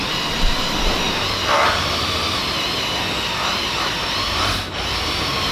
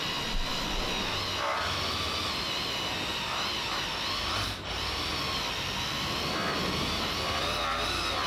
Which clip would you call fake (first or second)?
first